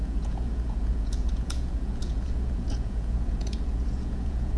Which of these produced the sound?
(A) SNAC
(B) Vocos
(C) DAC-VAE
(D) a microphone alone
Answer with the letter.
B